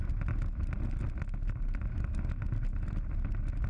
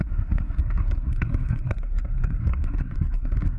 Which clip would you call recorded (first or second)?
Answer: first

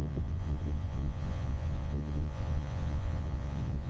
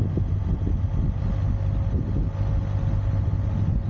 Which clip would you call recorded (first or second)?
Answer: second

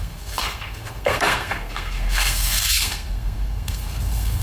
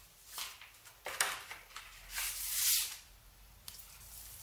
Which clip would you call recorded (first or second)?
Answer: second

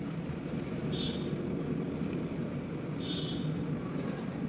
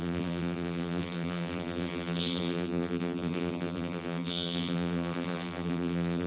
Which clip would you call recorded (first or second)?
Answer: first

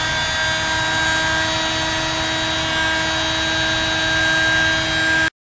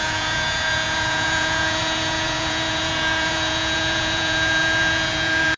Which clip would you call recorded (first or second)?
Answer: first